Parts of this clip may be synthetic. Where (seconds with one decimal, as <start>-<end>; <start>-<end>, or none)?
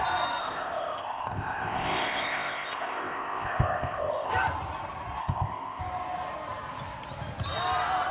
0.4-4.3; 5.2-5.8